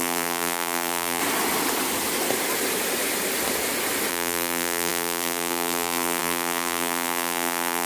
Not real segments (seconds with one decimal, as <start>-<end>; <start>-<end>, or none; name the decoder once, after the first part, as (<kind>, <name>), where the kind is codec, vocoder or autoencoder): 0.0-1.2 (vocoder, BigVGAN v2); 4.1-7.9